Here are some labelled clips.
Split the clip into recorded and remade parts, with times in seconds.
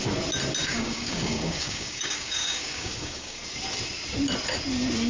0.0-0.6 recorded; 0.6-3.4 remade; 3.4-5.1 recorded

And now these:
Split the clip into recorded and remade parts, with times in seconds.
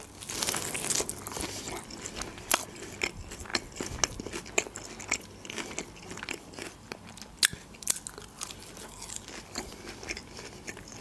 0.0-11.0 recorded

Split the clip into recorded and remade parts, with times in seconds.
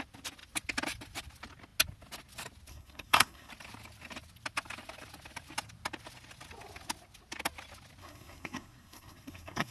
0.0-2.7 recorded; 2.7-3.5 remade; 3.5-8.0 recorded; 8.0-9.7 remade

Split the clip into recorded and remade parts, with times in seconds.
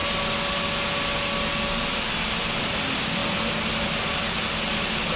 0.0-5.2 recorded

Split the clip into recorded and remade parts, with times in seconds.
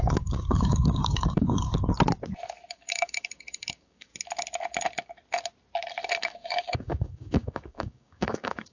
0.0-1.7 remade; 1.7-2.7 recorded; 2.7-4.1 remade; 4.1-6.2 recorded; 6.2-8.7 remade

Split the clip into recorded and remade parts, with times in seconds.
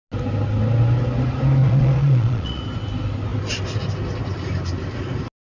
0.0-1.6 recorded; 1.6-2.6 remade; 2.6-5.5 recorded